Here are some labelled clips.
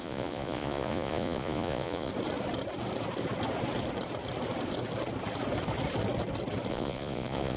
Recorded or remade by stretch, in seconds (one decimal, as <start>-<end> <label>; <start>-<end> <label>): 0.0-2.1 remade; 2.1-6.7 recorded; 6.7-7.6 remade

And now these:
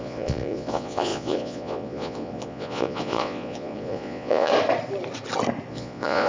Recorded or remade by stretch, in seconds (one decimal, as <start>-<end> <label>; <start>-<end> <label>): 0.0-4.5 remade; 4.5-5.7 recorded; 5.7-6.3 remade

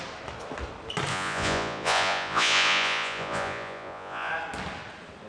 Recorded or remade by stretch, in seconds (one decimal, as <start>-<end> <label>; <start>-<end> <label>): 0.0-1.1 recorded; 1.1-4.3 remade; 4.3-5.3 recorded

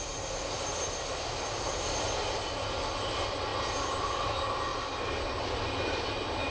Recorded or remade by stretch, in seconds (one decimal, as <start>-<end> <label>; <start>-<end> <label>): 0.0-6.5 recorded

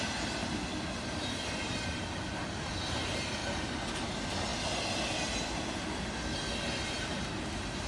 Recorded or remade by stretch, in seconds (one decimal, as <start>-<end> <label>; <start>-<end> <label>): 0.0-7.9 recorded